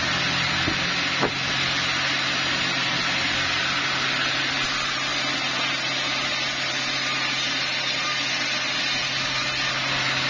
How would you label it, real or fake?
real